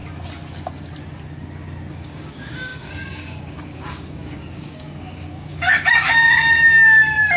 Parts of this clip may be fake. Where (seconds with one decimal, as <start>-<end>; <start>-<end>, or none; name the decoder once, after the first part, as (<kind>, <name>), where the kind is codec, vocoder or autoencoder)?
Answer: 1.9-7.4 (codec, DAC)